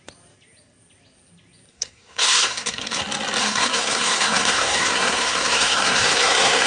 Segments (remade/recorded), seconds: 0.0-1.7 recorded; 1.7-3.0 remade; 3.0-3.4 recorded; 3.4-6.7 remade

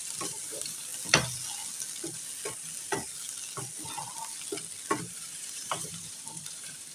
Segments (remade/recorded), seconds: 0.0-0.5 recorded; 0.5-0.9 remade; 0.9-5.0 recorded; 5.0-6.9 remade

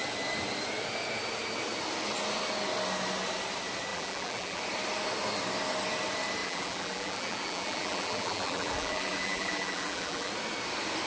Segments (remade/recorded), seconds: 0.0-3.9 recorded; 3.9-4.6 remade; 4.6-6.4 recorded; 6.4-10.3 remade; 10.3-11.1 recorded